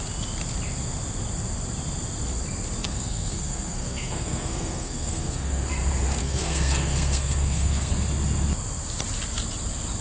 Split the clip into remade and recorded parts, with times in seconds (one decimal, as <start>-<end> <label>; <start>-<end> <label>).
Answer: 0.0-2.8 recorded; 2.8-5.7 remade; 5.7-6.2 recorded; 6.2-7.9 remade; 7.9-10.0 recorded